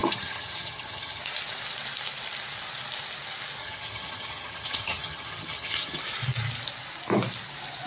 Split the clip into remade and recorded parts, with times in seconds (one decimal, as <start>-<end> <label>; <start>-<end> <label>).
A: 0.0-1.2 remade; 1.2-3.6 recorded; 3.6-6.0 remade; 6.0-7.9 recorded